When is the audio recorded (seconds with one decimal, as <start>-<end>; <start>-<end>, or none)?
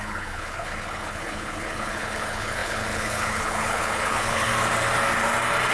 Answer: 4.5-5.7